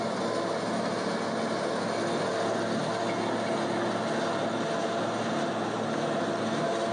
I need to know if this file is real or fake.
real